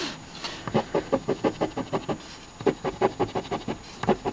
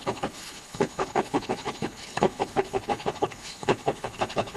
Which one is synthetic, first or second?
second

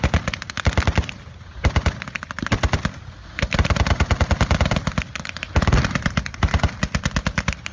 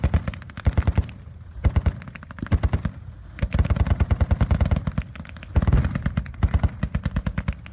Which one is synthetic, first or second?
first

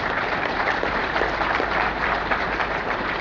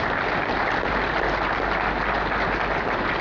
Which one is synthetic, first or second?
first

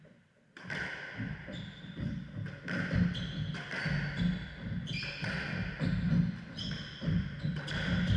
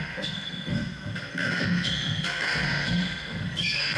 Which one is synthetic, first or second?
second